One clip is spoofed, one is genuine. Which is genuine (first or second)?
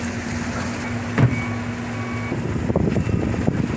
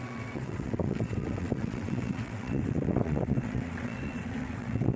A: first